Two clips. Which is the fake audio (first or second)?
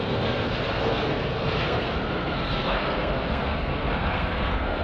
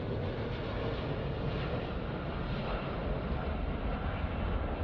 first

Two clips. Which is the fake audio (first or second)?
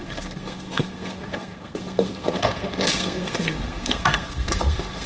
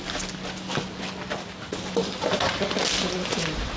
first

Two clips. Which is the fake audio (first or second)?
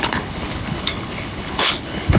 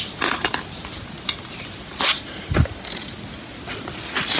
first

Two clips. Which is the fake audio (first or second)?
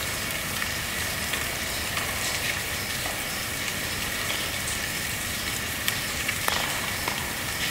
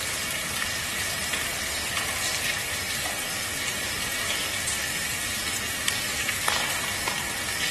first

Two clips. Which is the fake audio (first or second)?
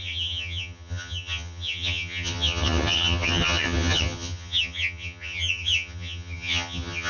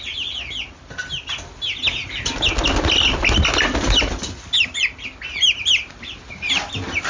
first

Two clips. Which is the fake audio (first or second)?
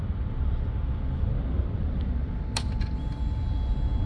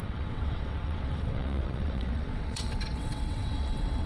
second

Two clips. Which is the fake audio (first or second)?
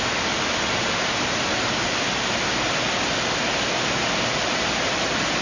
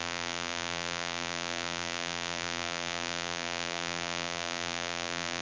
second